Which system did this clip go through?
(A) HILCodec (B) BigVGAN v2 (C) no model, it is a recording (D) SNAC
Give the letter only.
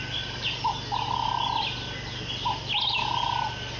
C